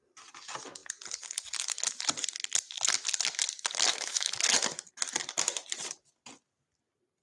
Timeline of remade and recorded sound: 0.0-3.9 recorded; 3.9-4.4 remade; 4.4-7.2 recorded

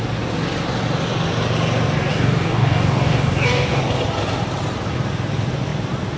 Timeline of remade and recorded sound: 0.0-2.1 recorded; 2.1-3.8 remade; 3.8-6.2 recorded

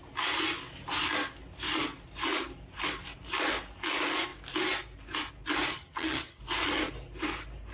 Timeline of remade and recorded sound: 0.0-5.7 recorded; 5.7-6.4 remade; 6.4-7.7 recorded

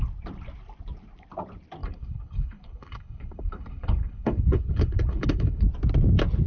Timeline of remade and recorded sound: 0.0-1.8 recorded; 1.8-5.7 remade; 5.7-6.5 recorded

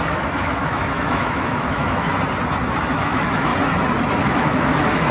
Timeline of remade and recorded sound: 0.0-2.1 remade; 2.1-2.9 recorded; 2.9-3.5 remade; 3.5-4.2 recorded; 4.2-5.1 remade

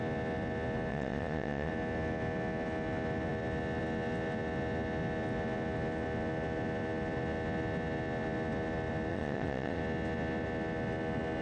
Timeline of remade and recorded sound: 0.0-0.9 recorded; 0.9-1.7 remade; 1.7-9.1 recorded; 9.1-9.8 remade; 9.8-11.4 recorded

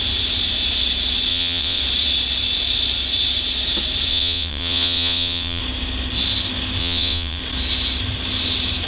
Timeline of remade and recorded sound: 0.0-1.3 recorded; 1.3-1.8 remade; 1.8-4.1 recorded; 4.1-5.6 remade; 5.6-6.8 recorded; 6.8-7.4 remade; 7.4-8.9 recorded